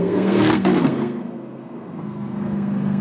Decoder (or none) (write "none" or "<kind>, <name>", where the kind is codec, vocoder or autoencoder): codec, SNAC